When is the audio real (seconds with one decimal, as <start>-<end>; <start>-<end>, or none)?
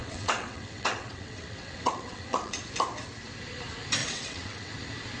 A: 2.6-4.0; 4.7-5.2